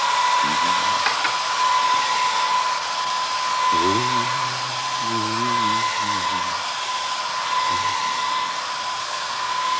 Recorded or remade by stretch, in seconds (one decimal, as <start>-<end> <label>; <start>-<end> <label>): 0.0-9.0 recorded; 9.0-9.8 remade